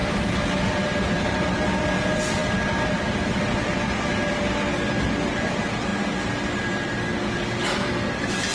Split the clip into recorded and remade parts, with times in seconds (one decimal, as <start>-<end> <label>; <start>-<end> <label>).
0.0-8.5 recorded